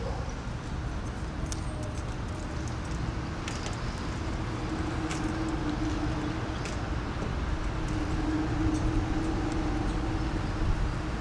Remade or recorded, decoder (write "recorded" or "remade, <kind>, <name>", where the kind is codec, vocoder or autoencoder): recorded